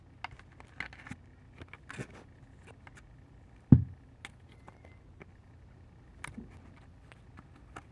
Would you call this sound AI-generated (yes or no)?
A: no